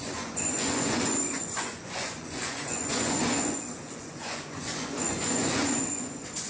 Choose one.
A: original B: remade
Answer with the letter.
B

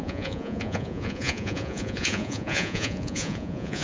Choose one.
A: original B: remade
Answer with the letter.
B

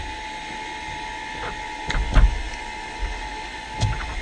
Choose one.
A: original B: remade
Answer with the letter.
A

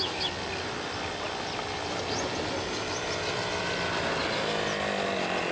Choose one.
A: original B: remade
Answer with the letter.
A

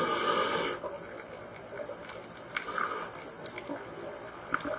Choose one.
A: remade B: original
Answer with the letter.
B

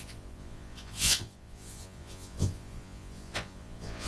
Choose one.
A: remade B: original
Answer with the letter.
A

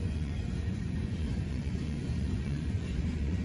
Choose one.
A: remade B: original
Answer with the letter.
A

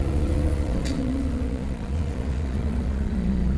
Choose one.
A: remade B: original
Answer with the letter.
A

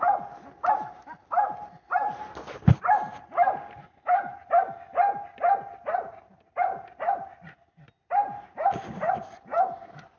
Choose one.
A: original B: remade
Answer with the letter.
A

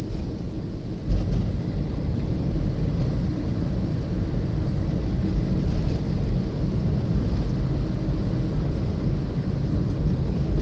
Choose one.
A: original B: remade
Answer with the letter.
A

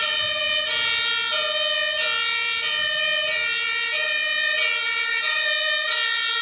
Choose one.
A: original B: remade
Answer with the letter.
A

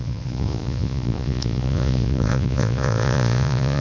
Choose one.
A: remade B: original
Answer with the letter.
A